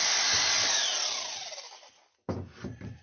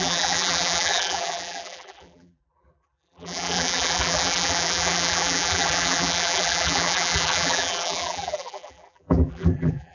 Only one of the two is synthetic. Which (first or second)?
second